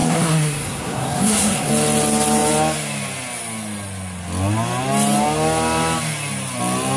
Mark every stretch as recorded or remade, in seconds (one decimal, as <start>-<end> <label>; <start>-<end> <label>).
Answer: 0.0-1.7 remade; 1.7-7.0 recorded